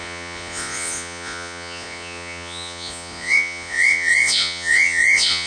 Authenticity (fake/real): fake